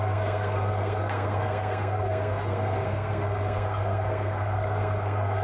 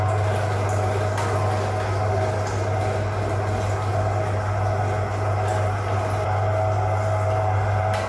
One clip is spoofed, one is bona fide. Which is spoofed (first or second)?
first